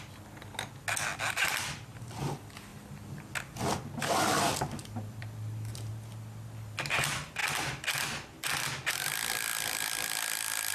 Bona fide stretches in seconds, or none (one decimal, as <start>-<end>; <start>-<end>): 0.0-4.8; 5.9-10.7